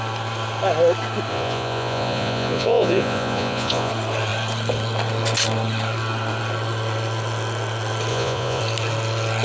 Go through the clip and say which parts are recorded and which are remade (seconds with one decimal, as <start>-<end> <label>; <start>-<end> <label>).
0.0-1.3 recorded; 1.3-3.9 remade; 3.9-8.1 recorded; 8.1-8.6 remade; 8.6-9.4 recorded